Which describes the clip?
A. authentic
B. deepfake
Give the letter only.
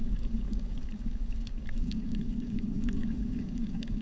B